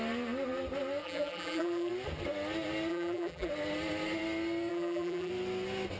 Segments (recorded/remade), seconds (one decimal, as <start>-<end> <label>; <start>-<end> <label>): 0.0-1.0 recorded; 1.0-1.9 remade; 1.9-2.9 recorded; 2.9-3.5 remade; 3.5-4.7 recorded; 4.7-5.3 remade; 5.3-6.0 recorded